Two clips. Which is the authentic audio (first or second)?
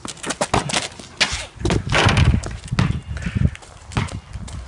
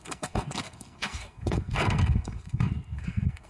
first